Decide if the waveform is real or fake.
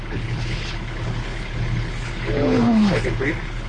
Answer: fake